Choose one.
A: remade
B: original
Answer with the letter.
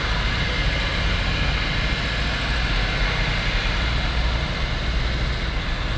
B